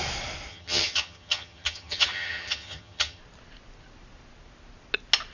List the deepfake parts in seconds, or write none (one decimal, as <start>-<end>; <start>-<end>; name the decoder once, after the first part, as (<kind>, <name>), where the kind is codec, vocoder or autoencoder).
0.5-3.2 (vocoder, HiFi-GAN)